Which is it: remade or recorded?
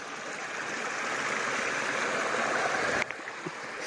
recorded